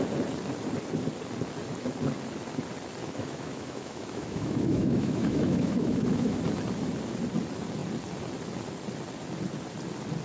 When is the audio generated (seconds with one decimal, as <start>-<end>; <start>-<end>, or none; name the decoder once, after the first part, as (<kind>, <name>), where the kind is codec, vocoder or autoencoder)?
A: 3.0-6.4 (autoencoder, DAC-VAE)